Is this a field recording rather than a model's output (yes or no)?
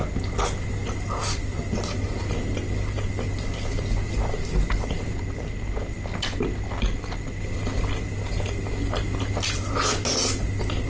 yes